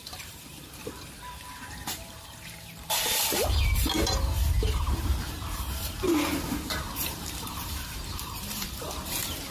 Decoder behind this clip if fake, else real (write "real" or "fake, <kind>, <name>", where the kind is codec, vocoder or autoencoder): fake, vocoder, BigVGAN v2